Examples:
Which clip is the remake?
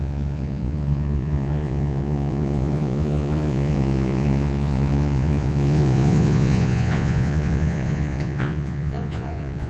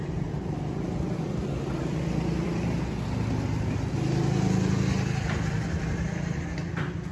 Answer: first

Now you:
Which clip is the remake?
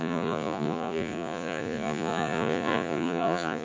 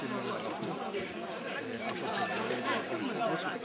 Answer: first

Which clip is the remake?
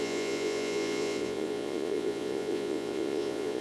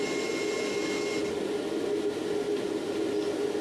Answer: first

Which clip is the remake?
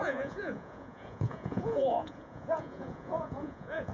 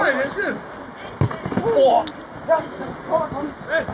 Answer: first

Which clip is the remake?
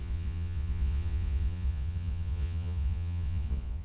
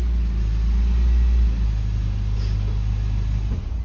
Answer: first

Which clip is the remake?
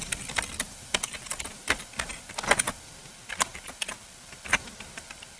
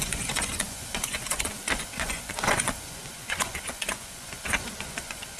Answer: second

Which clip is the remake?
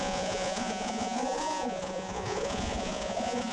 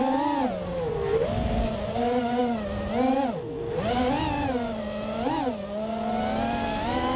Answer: first